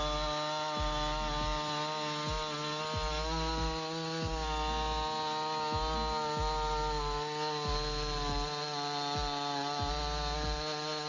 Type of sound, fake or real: real